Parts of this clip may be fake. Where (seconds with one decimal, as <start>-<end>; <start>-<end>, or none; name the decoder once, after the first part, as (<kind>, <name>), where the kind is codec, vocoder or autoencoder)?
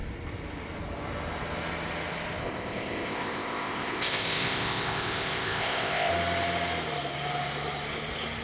2.4-6.1 (codec, ZipCodec)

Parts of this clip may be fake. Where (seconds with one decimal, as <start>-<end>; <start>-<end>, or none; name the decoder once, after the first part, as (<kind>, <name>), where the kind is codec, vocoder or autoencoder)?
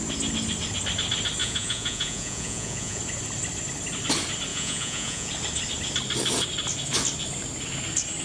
1.4-3.0 (vocoder, Vocos); 4.5-5.3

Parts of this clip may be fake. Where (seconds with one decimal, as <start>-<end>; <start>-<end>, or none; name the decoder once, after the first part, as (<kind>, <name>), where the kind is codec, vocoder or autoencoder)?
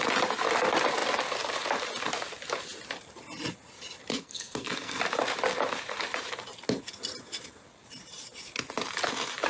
4.1-5.0 (codec, SNAC)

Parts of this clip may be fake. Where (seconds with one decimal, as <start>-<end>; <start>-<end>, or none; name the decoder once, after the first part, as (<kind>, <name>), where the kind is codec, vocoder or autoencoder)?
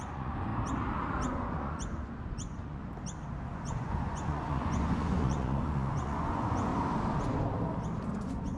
0.0-0.5 (vocoder, Vocos); 1.3-2.8; 3.5-6.7; 8.2-8.6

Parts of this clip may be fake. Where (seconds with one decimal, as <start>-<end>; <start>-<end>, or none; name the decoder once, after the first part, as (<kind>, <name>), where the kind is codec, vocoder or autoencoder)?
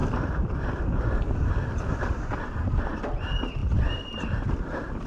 0.8-5.1 (vocoder, BigVGAN v2)